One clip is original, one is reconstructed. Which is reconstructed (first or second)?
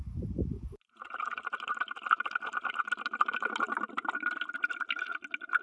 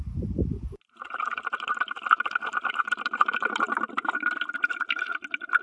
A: second